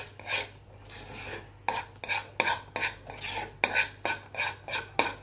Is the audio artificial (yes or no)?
no